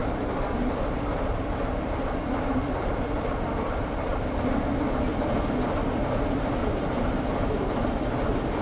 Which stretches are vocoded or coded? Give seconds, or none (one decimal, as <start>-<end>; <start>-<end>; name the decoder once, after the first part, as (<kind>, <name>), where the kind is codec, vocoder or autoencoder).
0.0-4.1 (vocoder, BigVGAN v2); 6.6-7.3